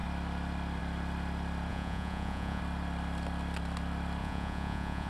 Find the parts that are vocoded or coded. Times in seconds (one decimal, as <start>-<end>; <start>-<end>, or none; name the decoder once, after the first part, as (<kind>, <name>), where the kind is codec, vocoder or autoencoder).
1.7-2.6 (vocoder, Vocos); 4.2-5.1